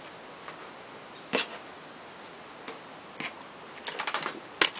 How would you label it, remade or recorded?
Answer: recorded